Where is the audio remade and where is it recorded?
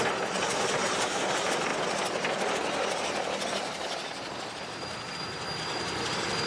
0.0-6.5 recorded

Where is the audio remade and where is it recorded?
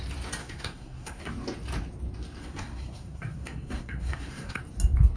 0.0-0.4 recorded; 0.4-1.3 remade; 1.3-2.4 recorded; 2.4-4.6 remade; 4.6-5.2 recorded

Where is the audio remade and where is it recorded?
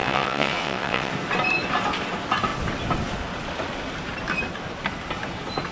0.0-1.1 remade; 1.1-5.7 recorded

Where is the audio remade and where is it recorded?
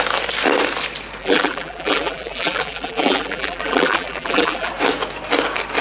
0.0-1.2 recorded; 1.2-4.7 remade; 4.7-5.8 recorded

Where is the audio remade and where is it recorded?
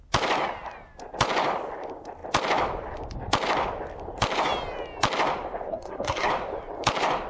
0.0-5.7 recorded; 5.7-6.3 remade; 6.3-7.3 recorded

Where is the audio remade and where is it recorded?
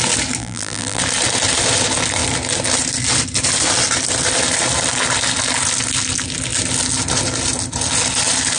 0.0-0.4 recorded; 0.4-1.0 remade; 1.0-8.6 recorded